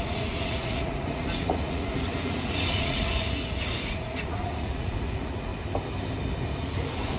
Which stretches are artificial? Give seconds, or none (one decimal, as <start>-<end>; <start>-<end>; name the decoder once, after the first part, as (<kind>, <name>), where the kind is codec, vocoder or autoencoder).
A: 0.0-5.5 (vocoder, Vocos); 6.6-7.2